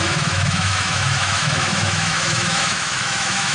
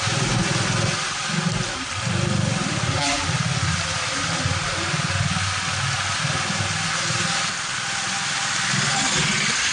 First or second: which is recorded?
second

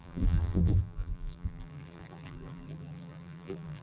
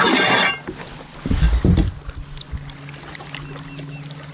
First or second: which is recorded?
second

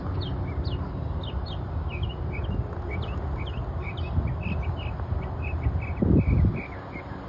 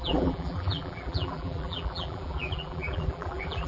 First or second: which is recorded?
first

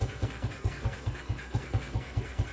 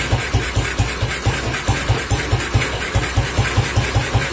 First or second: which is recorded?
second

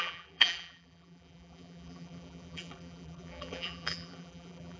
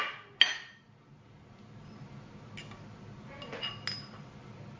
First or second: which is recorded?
second